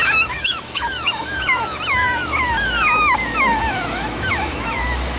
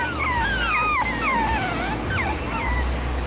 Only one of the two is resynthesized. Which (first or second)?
first